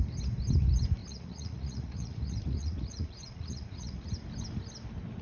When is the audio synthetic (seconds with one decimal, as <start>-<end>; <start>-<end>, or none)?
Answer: 1.0-4.1